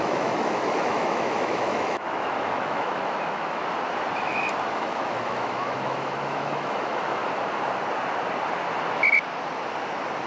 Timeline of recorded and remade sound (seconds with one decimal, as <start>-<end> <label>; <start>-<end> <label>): 0.0-3.6 remade; 3.6-4.7 recorded; 4.7-7.2 remade; 7.2-10.3 recorded